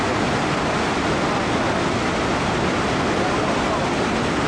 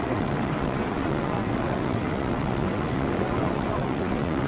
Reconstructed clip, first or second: second